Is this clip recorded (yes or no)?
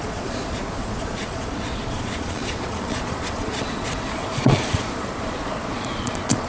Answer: no